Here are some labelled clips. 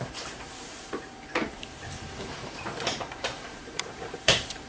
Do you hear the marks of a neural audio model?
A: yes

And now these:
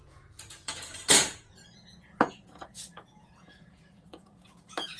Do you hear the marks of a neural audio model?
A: yes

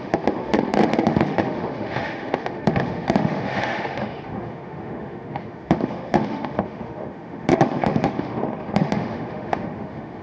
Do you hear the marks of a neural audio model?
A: yes